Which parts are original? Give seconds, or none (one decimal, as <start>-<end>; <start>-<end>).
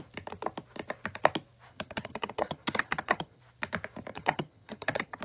0.0-1.7; 3.4-4.1